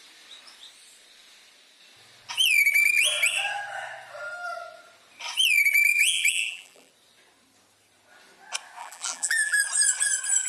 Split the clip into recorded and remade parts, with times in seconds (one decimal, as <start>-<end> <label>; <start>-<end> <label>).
0.0-5.9 recorded; 5.9-6.9 remade; 6.9-8.8 recorded; 8.8-9.6 remade; 9.6-10.5 recorded